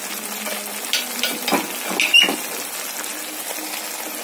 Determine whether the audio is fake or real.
real